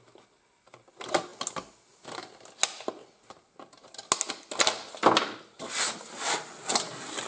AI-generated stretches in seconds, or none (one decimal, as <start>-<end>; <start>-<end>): none